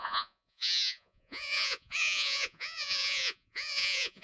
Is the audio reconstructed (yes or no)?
yes